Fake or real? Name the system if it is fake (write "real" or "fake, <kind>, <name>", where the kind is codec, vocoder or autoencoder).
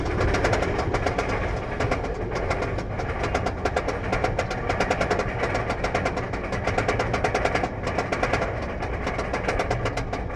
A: real